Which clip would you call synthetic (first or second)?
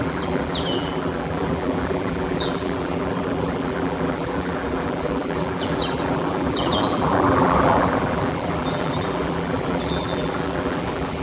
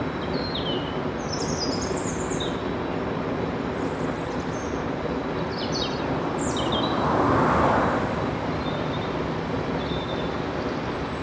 first